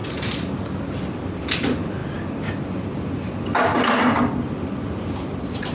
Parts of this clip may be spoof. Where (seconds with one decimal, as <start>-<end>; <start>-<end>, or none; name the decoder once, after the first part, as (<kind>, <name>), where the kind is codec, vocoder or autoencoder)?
none